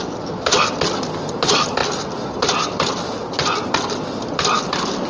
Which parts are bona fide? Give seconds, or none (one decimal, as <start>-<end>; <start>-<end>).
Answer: 0.0-1.8